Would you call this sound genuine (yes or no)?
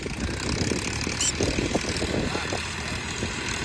yes